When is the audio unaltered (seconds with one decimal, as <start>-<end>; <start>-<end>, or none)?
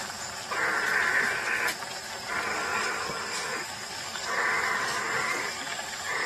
0.0-2.5